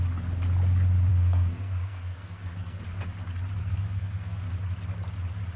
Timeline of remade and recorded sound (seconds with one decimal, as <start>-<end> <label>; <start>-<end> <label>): 0.0-1.1 recorded; 1.1-2.8 remade; 2.8-3.6 recorded; 3.6-4.4 remade; 4.4-5.6 recorded